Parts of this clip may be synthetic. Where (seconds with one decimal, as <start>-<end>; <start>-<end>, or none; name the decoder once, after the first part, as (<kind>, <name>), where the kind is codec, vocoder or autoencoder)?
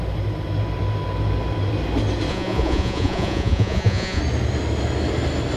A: 2.3-4.2 (vocoder, Vocos)